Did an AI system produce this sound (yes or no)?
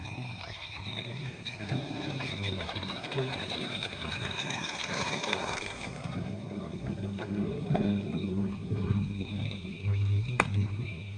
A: yes